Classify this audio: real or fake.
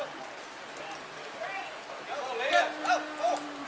real